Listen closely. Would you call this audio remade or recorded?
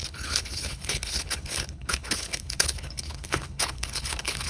remade